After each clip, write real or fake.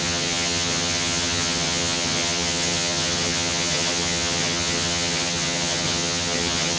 fake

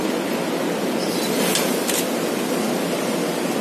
real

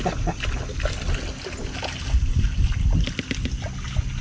real